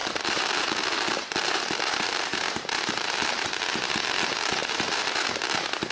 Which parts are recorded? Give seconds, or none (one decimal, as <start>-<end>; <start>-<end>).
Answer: 3.5-4.6; 5.3-5.9